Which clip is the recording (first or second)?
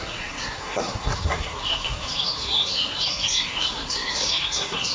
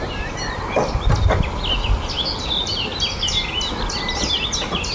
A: second